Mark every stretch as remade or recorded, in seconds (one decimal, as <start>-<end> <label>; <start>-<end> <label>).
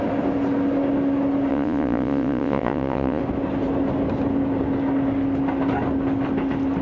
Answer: 0.0-1.5 recorded; 1.5-3.2 remade; 3.2-6.8 recorded